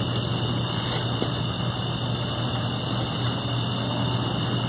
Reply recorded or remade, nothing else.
recorded